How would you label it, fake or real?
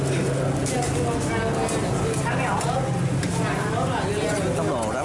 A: real